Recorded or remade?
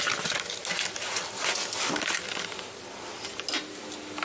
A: recorded